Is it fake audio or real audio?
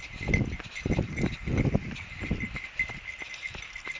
real